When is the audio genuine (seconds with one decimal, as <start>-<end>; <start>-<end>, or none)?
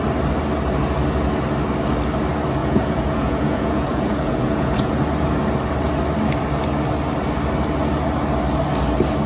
0.0-2.6; 4.9-9.3